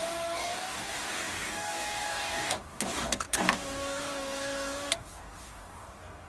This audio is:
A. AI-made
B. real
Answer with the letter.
A